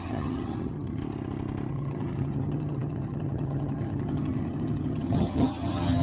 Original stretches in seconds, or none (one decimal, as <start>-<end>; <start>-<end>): 1.0-1.7